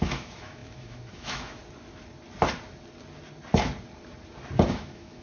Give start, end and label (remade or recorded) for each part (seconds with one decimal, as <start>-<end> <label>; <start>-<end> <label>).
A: 0.0-1.6 remade; 1.6-4.7 recorded; 4.7-5.2 remade